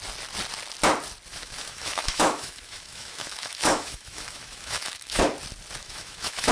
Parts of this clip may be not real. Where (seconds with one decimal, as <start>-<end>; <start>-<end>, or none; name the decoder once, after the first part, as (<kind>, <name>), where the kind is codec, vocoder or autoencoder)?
1.3-5.2 (autoencoder, DAC-VAE); 5.8-6.5